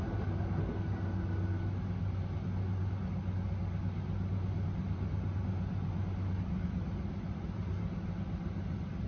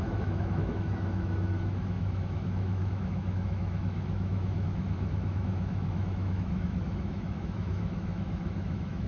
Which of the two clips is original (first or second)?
first